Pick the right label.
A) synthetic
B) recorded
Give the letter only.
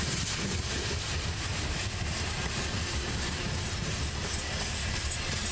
A